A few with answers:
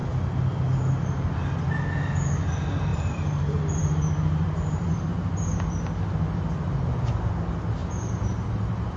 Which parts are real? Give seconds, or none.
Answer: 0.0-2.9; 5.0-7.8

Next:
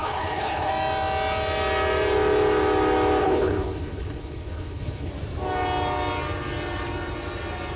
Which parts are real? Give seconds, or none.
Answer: 0.7-3.2; 5.1-7.8

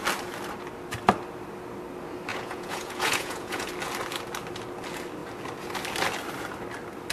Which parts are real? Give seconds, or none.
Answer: 0.0-2.3; 3.7-7.1